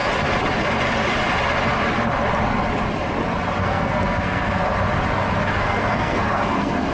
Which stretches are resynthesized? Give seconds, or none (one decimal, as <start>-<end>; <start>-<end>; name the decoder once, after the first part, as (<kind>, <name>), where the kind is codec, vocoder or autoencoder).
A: 3.6-4.6 (codec, SNAC); 5.5-6.9